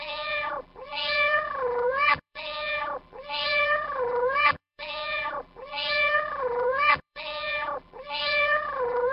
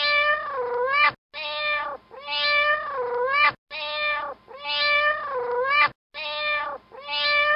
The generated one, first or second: first